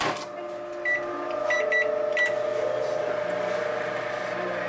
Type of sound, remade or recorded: recorded